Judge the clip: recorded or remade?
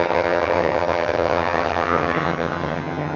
remade